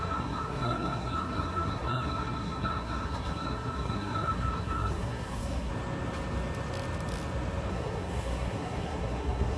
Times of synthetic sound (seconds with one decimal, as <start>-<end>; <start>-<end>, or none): 0.0-5.7; 7.7-9.6